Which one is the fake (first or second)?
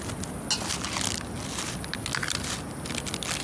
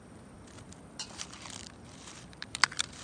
second